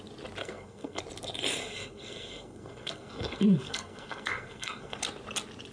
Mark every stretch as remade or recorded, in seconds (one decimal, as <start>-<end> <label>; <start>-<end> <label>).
0.0-0.4 recorded; 0.4-1.0 remade; 1.0-1.6 recorded; 1.6-5.0 remade; 5.0-5.7 recorded